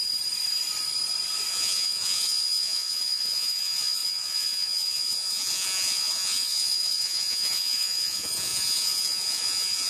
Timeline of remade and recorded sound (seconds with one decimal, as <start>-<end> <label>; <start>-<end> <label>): 0.0-1.5 recorded; 1.5-9.9 remade